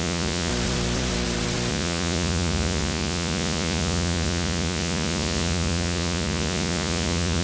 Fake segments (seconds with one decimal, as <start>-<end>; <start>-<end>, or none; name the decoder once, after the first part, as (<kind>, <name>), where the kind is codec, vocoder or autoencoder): 0.0-0.5 (vocoder, Vocos); 1.7-7.4